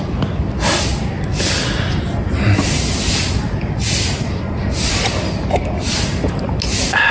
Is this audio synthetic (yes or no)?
no